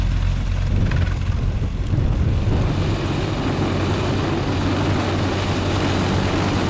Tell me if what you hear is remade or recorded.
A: recorded